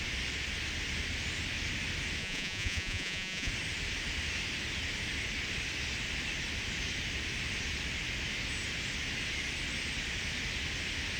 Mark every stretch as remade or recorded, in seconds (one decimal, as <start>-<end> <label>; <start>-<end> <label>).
0.0-2.2 recorded; 2.2-3.5 remade; 3.5-11.2 recorded